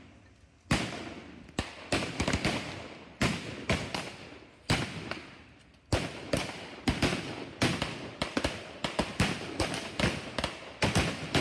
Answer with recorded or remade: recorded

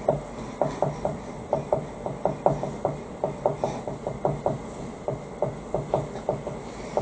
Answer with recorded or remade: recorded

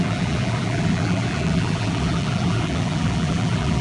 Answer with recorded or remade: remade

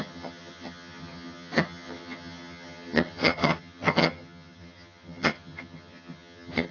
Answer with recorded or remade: remade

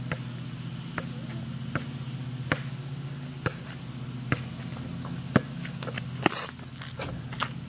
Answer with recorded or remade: recorded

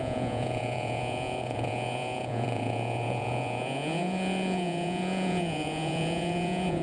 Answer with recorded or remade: remade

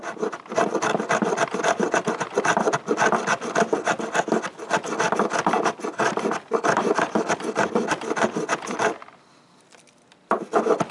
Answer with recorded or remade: recorded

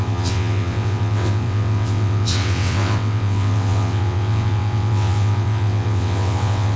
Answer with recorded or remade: remade